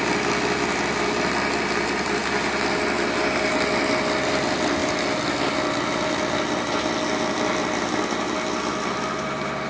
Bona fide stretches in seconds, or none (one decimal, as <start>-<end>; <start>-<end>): 0.0-9.7

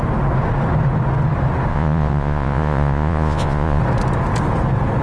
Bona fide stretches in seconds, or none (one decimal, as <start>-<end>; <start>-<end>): 0.0-1.7; 3.8-5.0